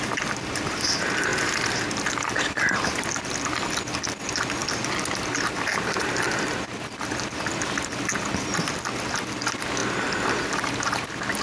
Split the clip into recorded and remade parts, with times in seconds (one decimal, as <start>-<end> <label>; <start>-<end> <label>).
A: 0.0-11.4 recorded